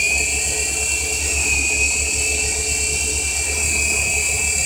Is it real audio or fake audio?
real